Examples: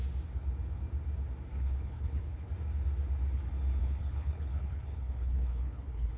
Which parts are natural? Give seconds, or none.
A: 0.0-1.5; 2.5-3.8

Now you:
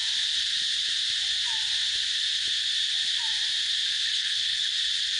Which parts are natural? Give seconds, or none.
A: 0.0-3.8; 4.7-5.2

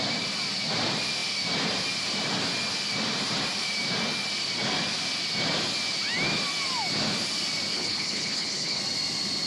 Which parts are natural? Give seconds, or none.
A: 0.0-7.7; 8.8-9.5

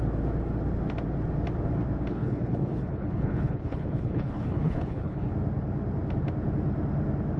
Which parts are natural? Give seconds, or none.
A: 0.0-2.1; 5.3-7.4

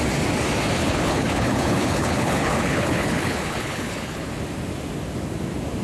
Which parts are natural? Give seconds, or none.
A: 0.0-0.8; 4.3-5.8